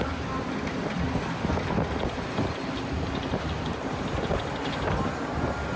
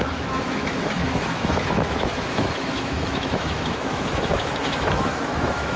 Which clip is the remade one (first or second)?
second